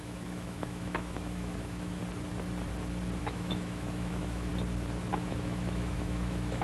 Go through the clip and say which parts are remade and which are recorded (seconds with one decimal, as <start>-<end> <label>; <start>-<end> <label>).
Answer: 0.0-2.0 remade; 2.0-3.2 recorded; 3.2-4.5 remade; 4.5-5.1 recorded; 5.1-6.6 remade